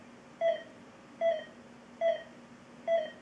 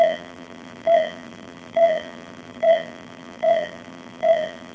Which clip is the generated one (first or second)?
second